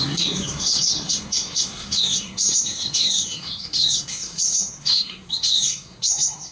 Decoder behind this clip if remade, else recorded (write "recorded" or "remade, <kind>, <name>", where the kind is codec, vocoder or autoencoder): remade, codec, SNAC